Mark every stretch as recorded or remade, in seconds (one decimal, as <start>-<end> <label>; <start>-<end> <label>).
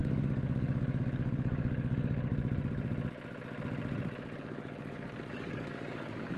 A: 0.0-2.3 remade; 2.3-4.4 recorded; 4.4-6.4 remade